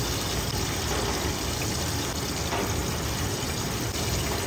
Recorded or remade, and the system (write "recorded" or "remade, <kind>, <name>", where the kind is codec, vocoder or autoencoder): recorded